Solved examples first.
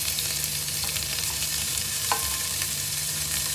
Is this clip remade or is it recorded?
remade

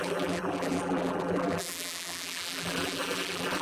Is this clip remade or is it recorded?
remade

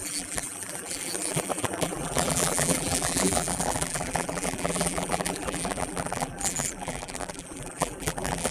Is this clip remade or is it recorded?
remade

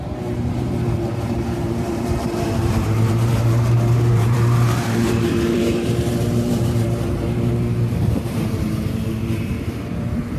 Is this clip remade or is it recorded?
remade